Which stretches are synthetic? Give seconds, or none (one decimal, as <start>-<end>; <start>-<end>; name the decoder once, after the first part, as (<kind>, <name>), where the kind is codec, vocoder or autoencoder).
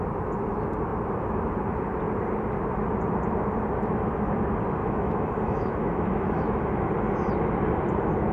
4.8-6.5 (autoencoder, DAC-VAE)